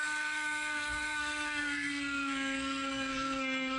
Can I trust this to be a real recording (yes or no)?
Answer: no